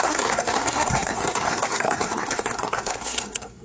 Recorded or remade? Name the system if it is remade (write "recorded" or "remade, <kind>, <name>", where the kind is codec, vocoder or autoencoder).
remade, codec, SNAC